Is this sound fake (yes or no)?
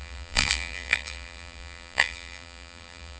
yes